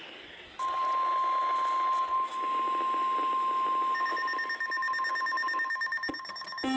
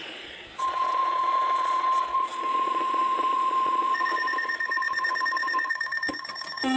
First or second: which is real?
first